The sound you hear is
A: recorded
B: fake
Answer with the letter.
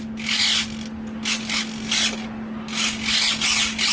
A